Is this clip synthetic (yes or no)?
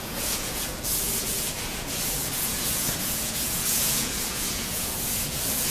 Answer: yes